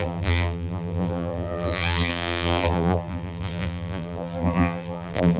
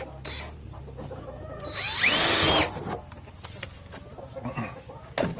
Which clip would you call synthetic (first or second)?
first